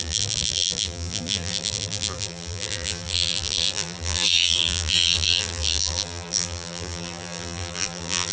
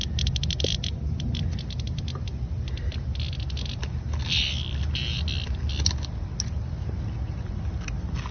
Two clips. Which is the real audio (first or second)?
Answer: second